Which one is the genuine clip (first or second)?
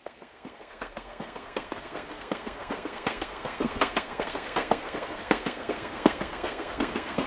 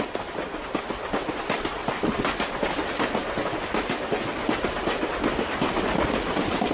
second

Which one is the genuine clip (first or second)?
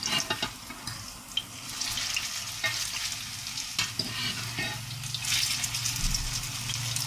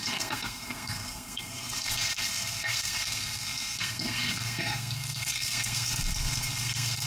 first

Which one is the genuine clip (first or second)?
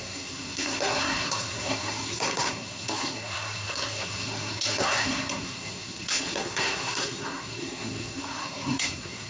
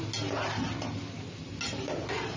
second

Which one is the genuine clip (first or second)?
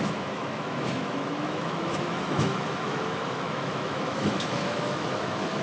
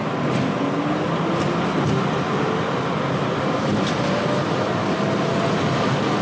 second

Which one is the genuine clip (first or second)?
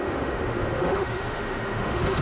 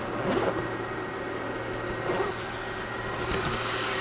second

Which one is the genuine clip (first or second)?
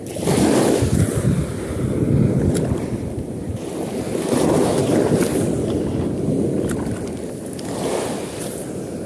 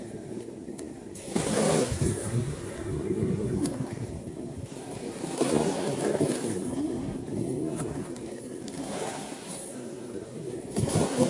first